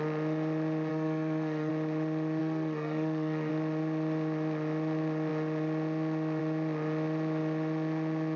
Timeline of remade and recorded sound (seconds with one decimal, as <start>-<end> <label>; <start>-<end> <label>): 0.0-0.9 recorded; 0.9-1.7 remade; 1.7-2.4 recorded; 2.4-3.5 remade; 3.5-8.4 recorded